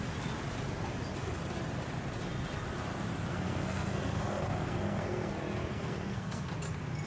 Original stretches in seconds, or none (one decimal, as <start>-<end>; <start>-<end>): 0.0-3.3; 5.3-5.7; 6.5-7.1